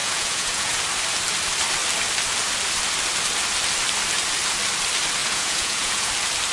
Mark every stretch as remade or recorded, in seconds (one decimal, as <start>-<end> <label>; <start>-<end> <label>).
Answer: 0.0-0.8 remade; 0.8-5.2 recorded; 5.2-6.1 remade; 6.1-6.5 recorded